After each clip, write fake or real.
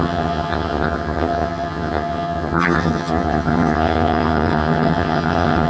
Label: fake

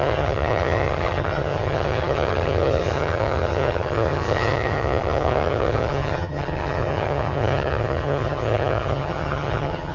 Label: fake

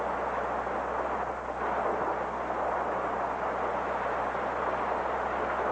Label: real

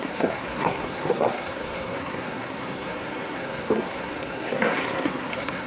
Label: fake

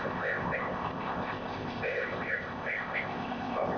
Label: fake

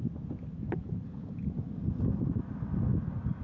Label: real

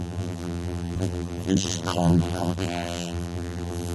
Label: fake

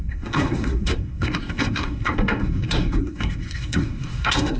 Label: fake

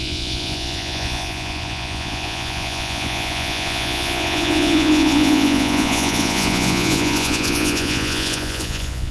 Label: fake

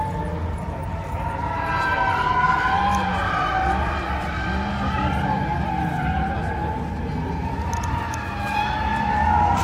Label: real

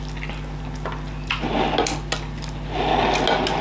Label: real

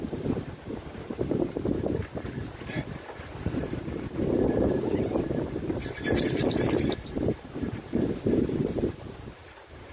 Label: fake